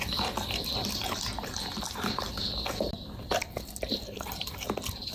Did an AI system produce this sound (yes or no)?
yes